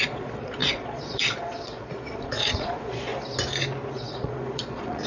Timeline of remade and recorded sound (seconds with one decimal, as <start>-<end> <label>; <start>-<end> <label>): 0.0-3.1 remade; 3.1-3.9 recorded; 3.9-5.1 remade